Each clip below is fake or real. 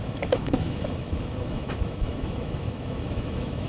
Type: fake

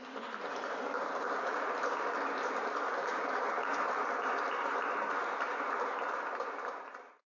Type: fake